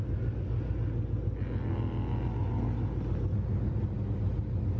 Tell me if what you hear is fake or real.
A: real